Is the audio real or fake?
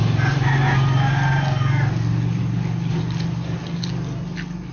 real